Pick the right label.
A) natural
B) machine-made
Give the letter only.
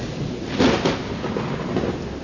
A